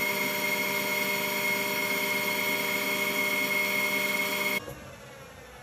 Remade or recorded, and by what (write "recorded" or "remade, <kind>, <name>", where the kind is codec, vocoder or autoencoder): recorded